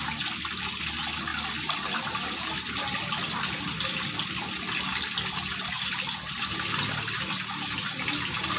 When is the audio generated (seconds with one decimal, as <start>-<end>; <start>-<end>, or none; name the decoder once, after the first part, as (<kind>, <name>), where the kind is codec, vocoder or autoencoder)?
1.3-2.4 (vocoder, BigVGAN v2)